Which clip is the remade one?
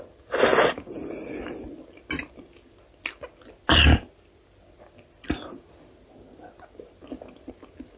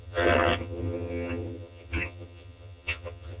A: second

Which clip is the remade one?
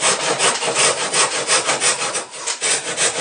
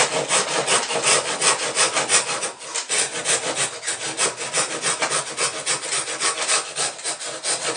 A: first